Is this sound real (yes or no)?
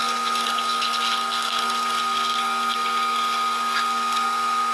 no